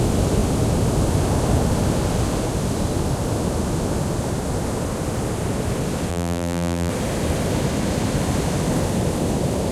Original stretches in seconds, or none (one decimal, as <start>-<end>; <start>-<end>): 0.0-6.1; 6.9-9.7